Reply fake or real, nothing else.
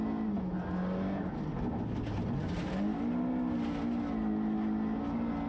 real